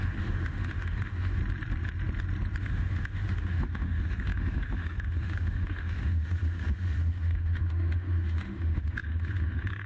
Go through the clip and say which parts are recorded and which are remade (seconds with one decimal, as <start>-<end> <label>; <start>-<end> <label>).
0.0-1.4 remade; 1.4-2.6 recorded; 2.6-9.9 remade